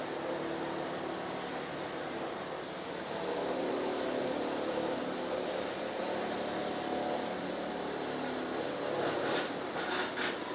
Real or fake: real